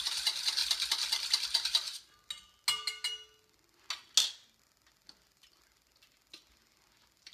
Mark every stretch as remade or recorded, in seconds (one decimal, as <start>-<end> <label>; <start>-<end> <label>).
0.0-7.3 recorded